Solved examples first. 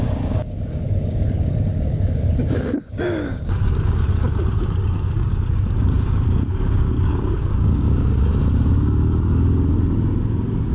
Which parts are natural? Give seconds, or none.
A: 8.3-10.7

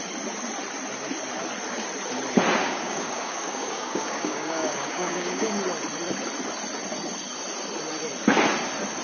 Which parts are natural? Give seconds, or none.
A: 0.0-2.6; 5.6-9.0

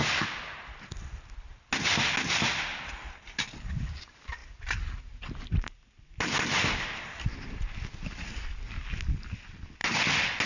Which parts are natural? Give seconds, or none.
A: 0.0-10.5